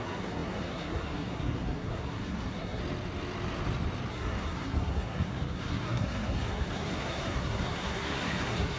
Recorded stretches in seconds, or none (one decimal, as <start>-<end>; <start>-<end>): 2.8-4.1